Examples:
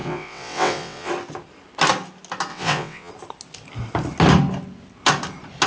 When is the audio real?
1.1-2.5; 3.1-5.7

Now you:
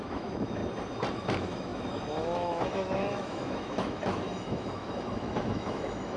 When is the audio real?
0.6-1.1